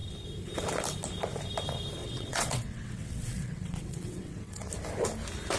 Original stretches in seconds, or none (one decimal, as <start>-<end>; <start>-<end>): 0.0-2.0; 4.7-5.6